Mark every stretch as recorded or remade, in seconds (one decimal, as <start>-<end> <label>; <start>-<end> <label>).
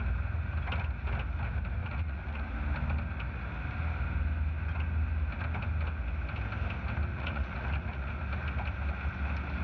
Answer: 0.0-1.8 recorded; 1.8-2.4 remade; 2.4-7.1 recorded; 7.1-8.1 remade; 8.1-9.6 recorded